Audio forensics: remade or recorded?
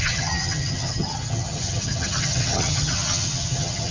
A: remade